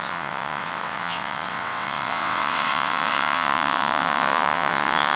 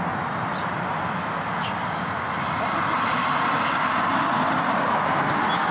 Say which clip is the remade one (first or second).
first